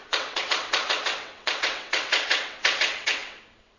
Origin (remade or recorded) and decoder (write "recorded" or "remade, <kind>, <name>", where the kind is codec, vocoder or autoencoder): remade, vocoder, WaveNeXt